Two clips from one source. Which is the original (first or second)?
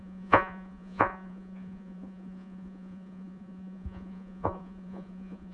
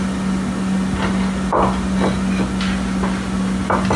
second